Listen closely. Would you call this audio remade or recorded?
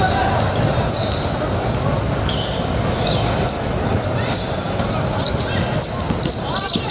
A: recorded